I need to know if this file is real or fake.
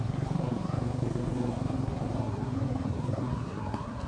fake